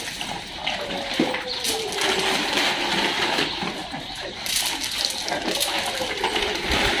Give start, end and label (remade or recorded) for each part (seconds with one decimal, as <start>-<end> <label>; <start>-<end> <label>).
0.0-3.8 recorded; 3.8-4.6 remade; 4.6-7.0 recorded